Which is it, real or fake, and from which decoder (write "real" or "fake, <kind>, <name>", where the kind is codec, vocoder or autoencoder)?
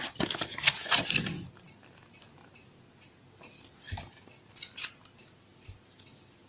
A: real